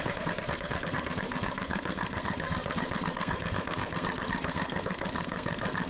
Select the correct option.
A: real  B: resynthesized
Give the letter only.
B